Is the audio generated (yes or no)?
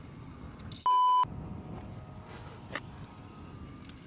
no